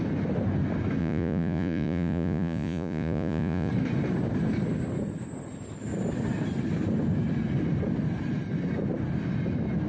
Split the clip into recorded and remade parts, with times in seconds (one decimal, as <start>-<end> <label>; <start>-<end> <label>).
0.0-1.0 recorded; 1.0-3.7 remade; 3.7-9.9 recorded